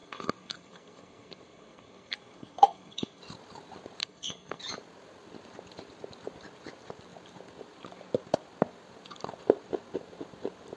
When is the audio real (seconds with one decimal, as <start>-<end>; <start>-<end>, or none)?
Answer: 3.2-4.0; 4.6-10.8